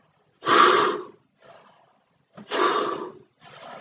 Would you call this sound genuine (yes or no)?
yes